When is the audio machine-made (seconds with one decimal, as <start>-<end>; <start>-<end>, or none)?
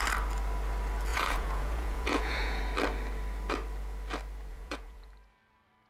1.1-2.6; 4.5-5.1